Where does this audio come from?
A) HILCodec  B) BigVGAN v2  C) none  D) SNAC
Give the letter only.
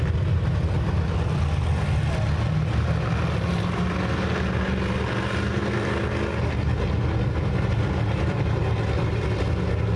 C